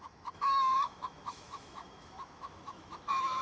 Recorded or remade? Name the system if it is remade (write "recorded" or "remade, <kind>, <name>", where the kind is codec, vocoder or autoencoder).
remade, autoencoder, DAC-VAE